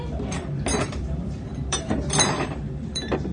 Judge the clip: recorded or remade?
remade